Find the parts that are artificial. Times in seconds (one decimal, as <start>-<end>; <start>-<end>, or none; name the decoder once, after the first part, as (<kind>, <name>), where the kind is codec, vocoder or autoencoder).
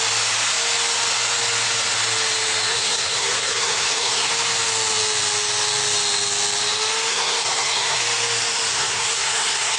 2.7-4.3 (codec, SNAC); 7.1-8.0; 8.7-9.8